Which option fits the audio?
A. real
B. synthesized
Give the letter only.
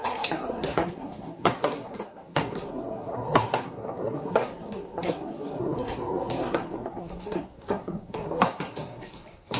B